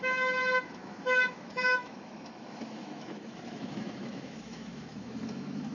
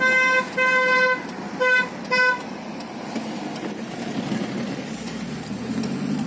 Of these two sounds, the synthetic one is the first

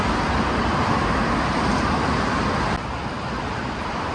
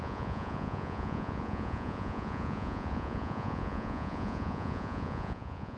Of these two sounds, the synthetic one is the second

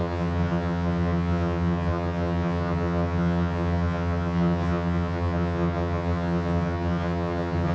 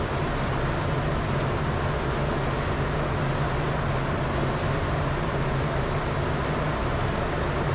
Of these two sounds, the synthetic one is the first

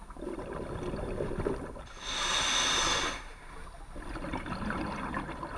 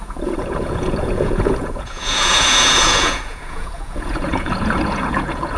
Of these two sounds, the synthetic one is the second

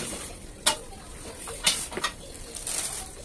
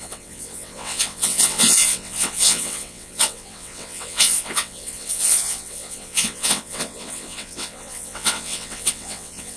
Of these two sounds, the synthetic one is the second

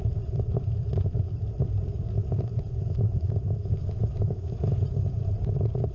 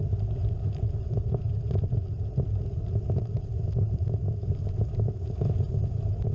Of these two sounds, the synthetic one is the first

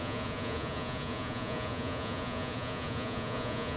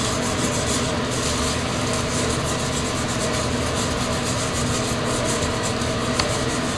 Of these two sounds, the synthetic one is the first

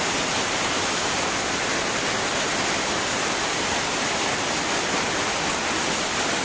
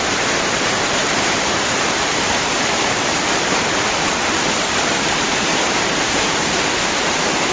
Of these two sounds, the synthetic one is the second